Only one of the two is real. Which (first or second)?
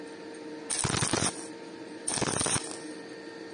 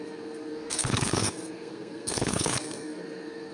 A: first